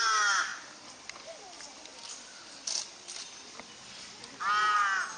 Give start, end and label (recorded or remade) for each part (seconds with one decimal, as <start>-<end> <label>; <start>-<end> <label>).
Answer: 0.0-5.2 recorded